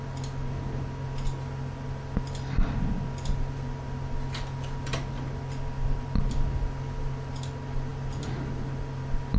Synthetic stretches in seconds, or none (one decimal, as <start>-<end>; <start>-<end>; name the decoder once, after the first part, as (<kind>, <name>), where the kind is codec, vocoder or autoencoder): none